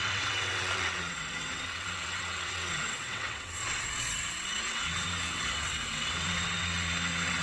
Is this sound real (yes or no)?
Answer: no